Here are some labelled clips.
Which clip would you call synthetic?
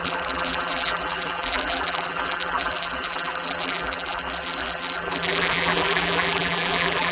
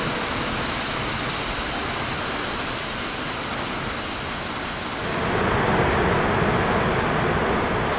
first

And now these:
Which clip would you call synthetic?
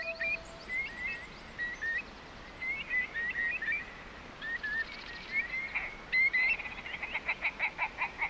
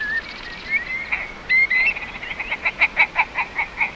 second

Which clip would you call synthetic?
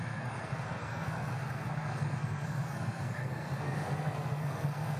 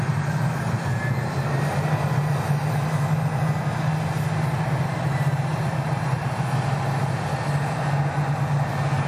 first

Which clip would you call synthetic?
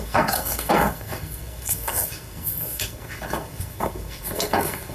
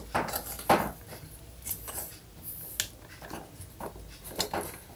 first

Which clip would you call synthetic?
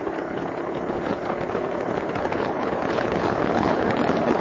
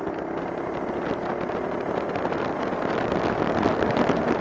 first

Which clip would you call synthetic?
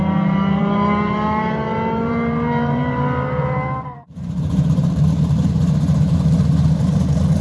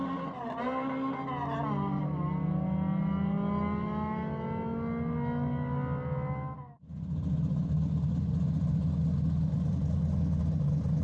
first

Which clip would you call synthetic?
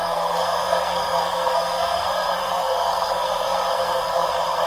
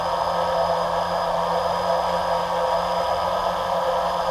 first